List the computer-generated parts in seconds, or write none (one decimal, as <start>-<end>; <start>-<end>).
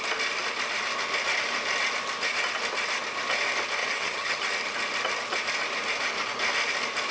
3.8-4.5